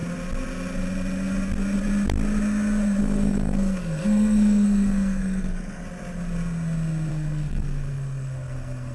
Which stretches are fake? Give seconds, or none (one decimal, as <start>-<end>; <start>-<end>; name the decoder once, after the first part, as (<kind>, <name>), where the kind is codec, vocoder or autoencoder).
3.0-5.8 (codec, SNAC); 7.1-8.9